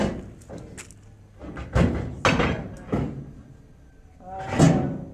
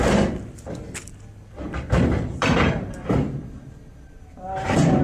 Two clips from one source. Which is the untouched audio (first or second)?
first